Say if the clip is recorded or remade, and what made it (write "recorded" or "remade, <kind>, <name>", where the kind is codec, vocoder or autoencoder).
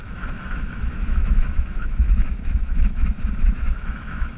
remade, autoencoder, DAC-VAE